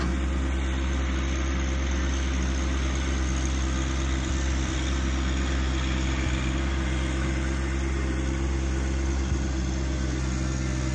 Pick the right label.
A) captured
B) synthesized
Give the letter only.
A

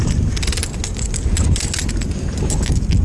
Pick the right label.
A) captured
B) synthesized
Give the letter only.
A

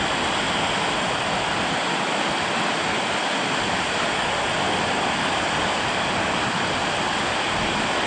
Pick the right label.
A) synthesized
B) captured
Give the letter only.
B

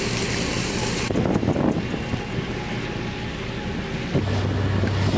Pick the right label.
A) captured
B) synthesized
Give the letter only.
A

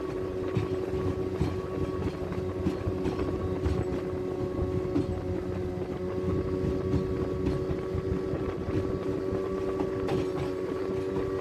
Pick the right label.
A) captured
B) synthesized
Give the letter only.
A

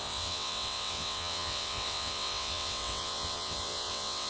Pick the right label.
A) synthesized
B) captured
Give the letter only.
A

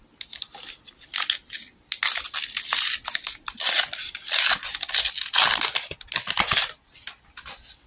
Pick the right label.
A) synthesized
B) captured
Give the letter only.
B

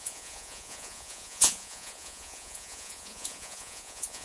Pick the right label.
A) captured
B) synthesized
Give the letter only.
B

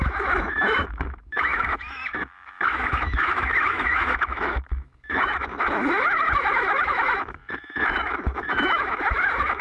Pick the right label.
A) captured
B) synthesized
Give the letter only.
B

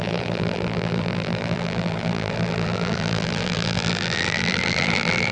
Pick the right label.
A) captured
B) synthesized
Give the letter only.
B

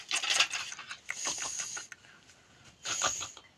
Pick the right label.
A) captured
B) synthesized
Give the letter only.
A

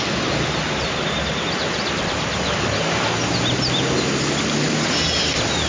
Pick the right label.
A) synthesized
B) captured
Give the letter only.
B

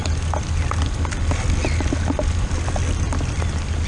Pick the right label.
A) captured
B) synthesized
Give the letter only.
A